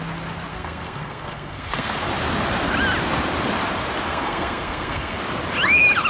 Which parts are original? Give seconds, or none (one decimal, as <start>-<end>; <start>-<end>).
0.0-0.5; 2.1-4.1; 5.2-6.1